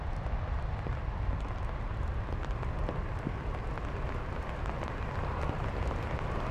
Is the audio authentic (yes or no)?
yes